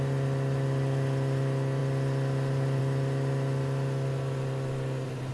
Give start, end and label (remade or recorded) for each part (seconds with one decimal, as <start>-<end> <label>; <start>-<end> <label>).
0.0-5.3 recorded